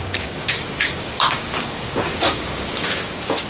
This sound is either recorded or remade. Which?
remade